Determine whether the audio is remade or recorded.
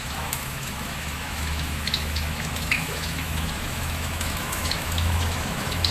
remade